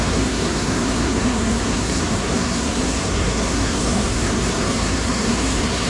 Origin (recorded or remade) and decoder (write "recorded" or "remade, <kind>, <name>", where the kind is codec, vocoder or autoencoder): remade, codec, SNAC